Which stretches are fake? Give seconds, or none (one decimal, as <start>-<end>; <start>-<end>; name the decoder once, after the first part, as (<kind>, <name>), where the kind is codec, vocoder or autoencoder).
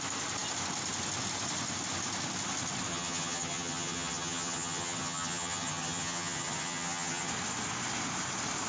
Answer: 2.9-7.3 (vocoder, HiFi-GAN)